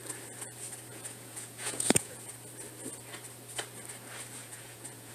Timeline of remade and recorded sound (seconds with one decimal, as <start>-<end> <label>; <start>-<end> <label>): 0.0-0.9 recorded; 0.9-2.3 remade; 2.3-4.4 recorded; 4.4-5.1 remade